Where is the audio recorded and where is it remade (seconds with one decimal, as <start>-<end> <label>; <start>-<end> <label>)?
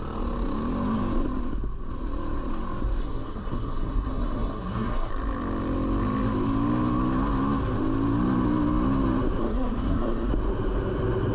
0.0-3.0 recorded; 3.0-5.1 remade; 5.1-9.4 recorded; 9.4-10.3 remade; 10.3-11.3 recorded